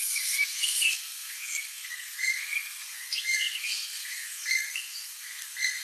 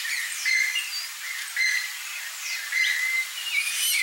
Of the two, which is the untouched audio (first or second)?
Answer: second